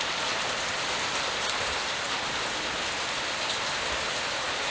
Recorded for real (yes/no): yes